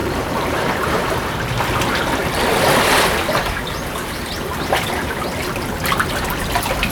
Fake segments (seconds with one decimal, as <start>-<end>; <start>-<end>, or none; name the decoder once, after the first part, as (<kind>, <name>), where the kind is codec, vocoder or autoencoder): 0.0-1.3 (vocoder, BigVGAN v2)